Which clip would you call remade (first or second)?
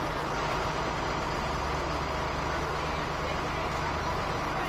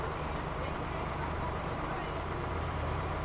second